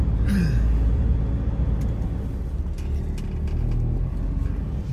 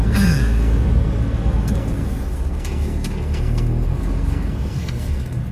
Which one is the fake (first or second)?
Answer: second